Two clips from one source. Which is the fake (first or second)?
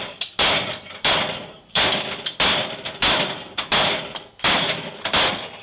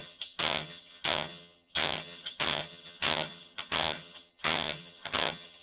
second